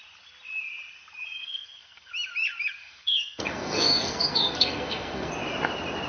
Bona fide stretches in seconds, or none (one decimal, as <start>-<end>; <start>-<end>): 0.0-1.4; 2.1-2.8; 5.3-6.1